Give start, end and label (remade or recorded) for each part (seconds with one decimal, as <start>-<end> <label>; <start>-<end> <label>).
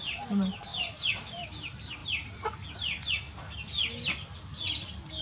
0.0-5.2 recorded